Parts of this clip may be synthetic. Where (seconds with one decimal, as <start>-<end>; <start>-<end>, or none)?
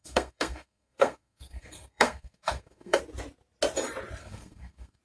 0.0-3.0; 4.2-5.0